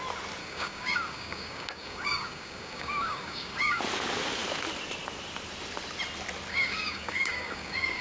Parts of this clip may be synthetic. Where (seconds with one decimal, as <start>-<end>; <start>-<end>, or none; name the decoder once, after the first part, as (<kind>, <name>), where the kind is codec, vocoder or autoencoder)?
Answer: 0.4-3.8 (codec, DAC); 6.5-8.0